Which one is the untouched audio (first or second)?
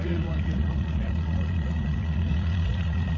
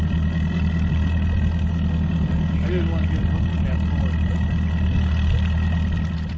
second